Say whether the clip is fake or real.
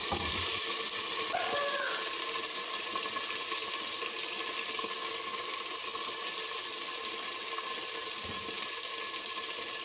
fake